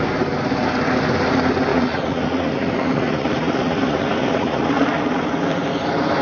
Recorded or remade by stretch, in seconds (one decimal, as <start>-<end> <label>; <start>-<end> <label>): 0.0-1.7 recorded; 1.7-5.4 remade; 5.4-6.2 recorded